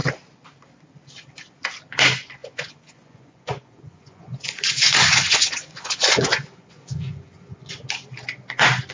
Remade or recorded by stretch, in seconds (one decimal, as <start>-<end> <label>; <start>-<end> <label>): 0.0-2.4 recorded; 2.4-7.7 remade; 7.7-8.9 recorded